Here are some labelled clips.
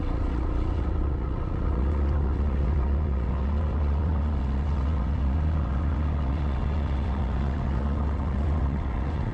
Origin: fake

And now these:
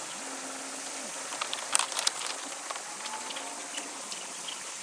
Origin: real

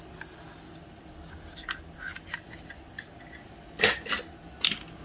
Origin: real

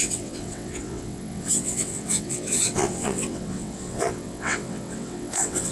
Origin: fake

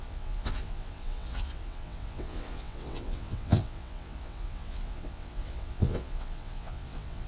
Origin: fake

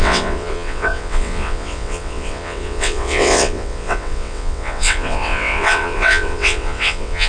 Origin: fake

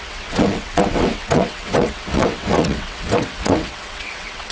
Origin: fake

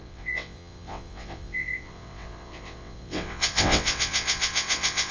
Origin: fake